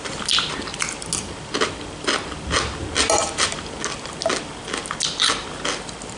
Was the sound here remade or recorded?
recorded